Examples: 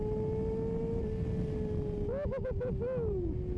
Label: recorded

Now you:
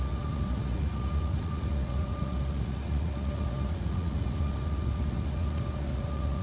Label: remade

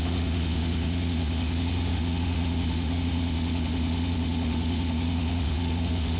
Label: remade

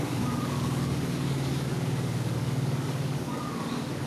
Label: remade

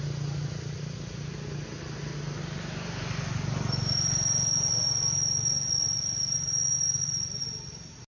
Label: recorded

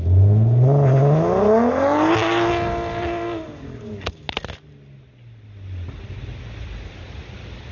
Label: recorded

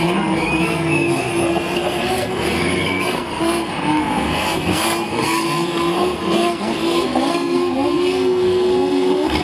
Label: remade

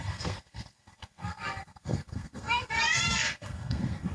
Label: remade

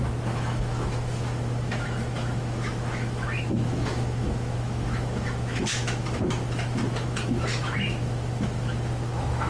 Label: remade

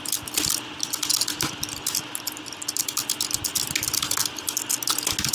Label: recorded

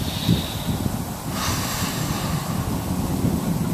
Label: recorded